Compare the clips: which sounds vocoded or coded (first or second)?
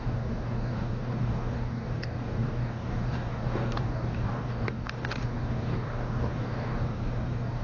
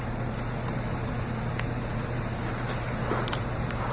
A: first